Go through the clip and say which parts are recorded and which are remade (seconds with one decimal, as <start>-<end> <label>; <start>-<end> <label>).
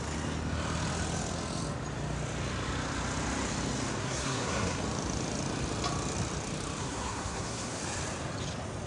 0.0-4.0 recorded; 4.0-4.8 remade; 4.8-6.8 recorded; 6.8-7.8 remade; 7.8-8.9 recorded